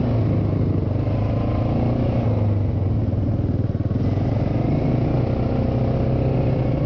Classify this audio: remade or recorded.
recorded